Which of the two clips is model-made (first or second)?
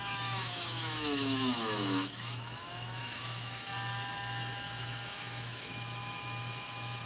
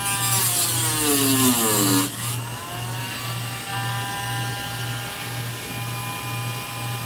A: first